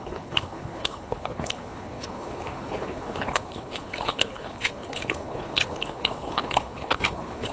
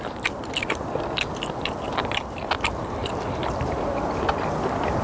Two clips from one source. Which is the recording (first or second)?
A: second